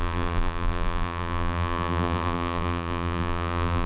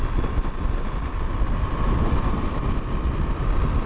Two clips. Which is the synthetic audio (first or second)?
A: first